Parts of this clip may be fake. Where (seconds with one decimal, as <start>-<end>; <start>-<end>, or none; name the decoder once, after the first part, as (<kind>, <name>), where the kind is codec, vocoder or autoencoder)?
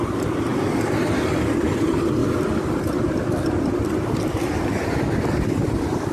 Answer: none